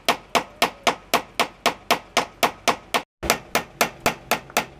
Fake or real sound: real